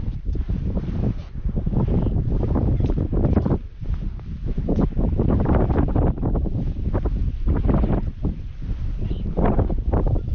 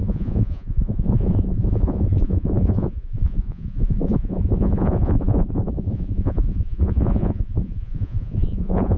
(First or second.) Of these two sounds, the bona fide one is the first